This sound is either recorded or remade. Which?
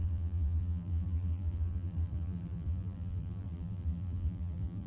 remade